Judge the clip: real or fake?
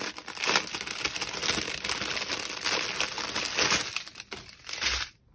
real